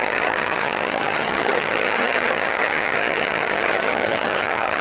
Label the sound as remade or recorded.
remade